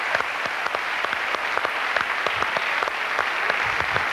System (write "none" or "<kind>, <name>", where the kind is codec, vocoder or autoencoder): none